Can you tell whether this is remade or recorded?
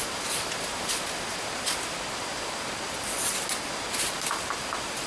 recorded